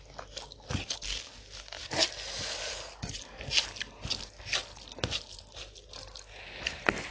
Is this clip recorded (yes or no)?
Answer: yes